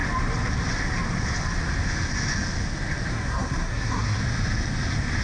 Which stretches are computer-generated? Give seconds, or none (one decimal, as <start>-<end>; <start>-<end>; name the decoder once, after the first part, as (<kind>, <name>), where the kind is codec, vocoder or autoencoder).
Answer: 3.1-4.2 (codec, SNAC)